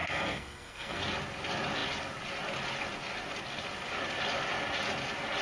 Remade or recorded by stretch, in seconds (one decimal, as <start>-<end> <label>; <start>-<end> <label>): 0.0-1.0 remade; 1.0-5.4 recorded